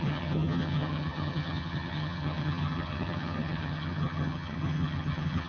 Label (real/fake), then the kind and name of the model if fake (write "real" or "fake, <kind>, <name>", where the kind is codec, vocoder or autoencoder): fake, vocoder, HiFi-GAN